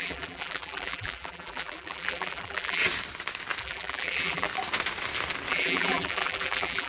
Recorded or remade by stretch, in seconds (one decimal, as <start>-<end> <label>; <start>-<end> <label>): 0.0-2.8 remade; 2.8-3.6 recorded; 3.6-4.5 remade; 4.5-5.5 recorded; 5.5-6.9 remade